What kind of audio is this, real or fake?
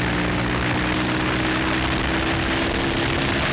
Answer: real